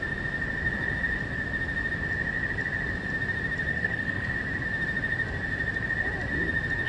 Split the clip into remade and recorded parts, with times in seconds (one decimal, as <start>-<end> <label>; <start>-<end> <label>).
0.0-3.7 recorded; 3.7-4.3 remade; 4.3-6.9 recorded